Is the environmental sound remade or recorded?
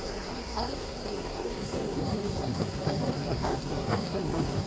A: remade